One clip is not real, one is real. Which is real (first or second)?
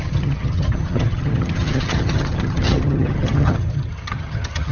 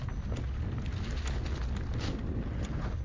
second